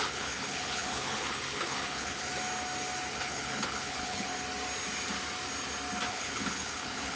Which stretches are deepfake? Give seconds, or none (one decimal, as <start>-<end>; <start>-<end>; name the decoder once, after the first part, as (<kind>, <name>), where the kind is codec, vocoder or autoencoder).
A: 0.0-2.3 (codec, HILCodec); 3.1-4.3; 6.1-7.2